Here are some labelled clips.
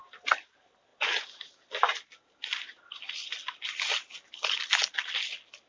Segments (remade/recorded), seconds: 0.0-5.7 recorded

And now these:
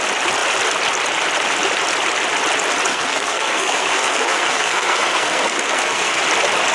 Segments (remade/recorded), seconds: 0.0-2.9 recorded; 2.9-6.2 remade; 6.2-6.7 recorded

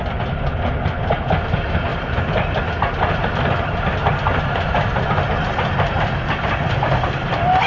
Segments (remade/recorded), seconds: 0.0-1.9 recorded; 1.9-2.6 remade; 2.6-7.7 recorded

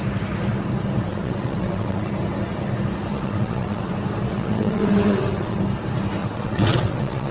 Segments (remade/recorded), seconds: 0.0-1.1 recorded; 1.1-2.1 remade; 2.1-3.1 recorded; 3.1-3.9 remade; 3.9-4.3 recorded; 4.3-5.6 remade; 5.6-6.2 recorded; 6.2-7.3 remade